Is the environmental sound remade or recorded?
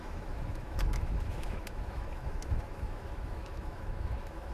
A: remade